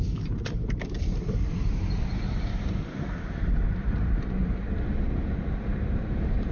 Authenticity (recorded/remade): remade